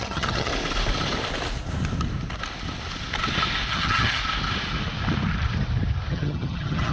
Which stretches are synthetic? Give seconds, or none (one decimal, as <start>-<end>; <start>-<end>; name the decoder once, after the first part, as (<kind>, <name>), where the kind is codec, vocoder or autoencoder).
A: 0.0-0.5 (vocoder, HiFi-GAN); 3.7-4.2; 6.1-6.9

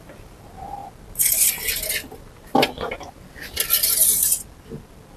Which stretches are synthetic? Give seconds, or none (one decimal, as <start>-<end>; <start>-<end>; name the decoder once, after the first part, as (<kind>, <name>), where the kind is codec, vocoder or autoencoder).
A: none

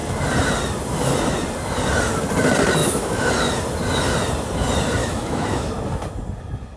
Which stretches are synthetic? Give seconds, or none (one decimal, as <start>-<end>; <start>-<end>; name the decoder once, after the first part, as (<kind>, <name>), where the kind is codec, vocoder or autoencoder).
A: 2.8-3.3 (autoencoder, DAC-VAE); 5.0-5.7

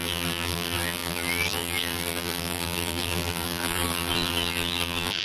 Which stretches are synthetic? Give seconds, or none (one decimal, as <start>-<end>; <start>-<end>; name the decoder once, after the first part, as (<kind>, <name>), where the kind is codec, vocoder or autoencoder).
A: 0.0-5.2 (vocoder, BigVGAN v2)

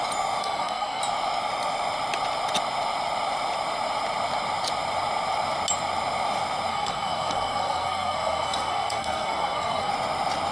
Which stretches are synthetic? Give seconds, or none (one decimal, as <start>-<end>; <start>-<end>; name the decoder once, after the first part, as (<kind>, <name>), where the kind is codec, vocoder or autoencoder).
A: 0.4-1.0 (codec, SNAC); 6.7-9.9

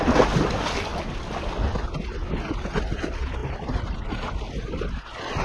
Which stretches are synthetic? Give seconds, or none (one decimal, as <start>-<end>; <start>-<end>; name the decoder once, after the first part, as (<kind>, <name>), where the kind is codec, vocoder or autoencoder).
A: none

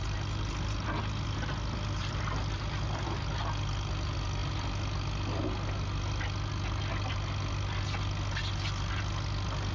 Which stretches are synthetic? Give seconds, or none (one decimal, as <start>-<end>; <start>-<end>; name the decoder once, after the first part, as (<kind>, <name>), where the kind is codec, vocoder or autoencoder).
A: 2.0-3.4 (vocoder, BigVGAN v2)

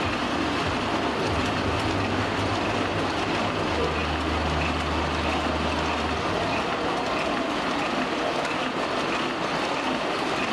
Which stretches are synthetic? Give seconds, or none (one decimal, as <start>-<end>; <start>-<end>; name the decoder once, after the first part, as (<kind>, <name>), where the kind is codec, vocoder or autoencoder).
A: none